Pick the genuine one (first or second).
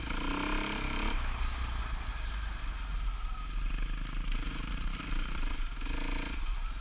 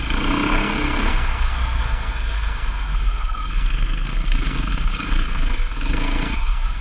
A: first